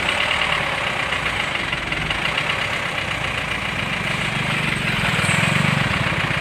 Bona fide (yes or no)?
yes